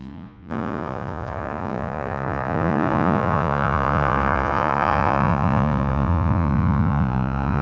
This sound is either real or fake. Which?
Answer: fake